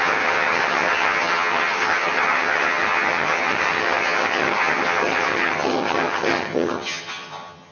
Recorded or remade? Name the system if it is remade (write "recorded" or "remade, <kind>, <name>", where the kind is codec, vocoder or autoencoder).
remade, vocoder, HiFi-GAN